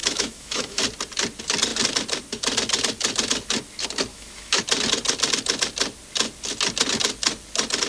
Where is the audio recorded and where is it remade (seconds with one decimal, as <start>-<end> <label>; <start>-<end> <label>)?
0.0-0.8 remade; 0.8-4.1 recorded; 4.1-4.6 remade; 4.6-7.9 recorded